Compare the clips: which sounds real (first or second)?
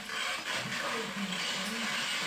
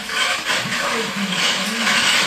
first